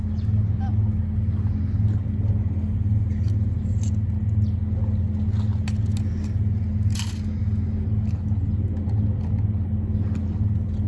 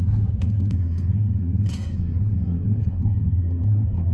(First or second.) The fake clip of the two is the second